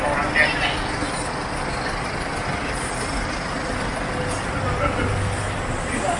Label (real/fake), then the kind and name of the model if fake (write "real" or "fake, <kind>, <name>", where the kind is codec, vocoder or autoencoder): real